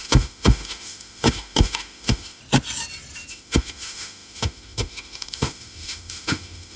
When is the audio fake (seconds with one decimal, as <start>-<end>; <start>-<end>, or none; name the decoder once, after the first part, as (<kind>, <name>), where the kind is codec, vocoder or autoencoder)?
0.0-2.4 (autoencoder, DAC-VAE); 3.3-6.8